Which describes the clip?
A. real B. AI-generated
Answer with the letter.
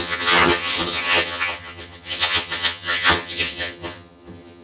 B